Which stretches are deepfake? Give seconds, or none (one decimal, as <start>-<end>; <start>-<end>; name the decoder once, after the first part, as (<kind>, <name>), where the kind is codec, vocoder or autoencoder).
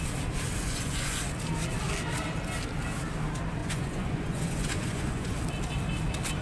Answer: 0.6-1.2 (vocoder, Vocos); 3.6-5.4